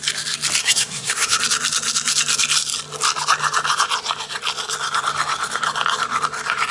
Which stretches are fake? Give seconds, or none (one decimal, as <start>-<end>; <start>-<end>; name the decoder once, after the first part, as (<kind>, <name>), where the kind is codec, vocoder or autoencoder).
0.6-1.4 (codec, SNAC)